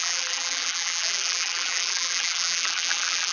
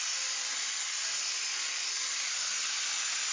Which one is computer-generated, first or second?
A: first